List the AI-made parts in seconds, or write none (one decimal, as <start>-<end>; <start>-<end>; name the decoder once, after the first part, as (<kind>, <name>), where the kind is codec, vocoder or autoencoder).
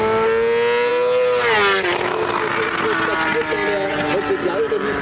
none